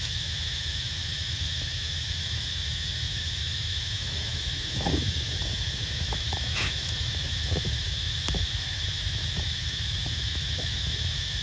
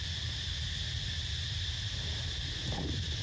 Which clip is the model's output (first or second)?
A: first